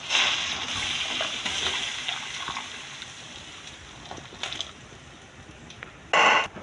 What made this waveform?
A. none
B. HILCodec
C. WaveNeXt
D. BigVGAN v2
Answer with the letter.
A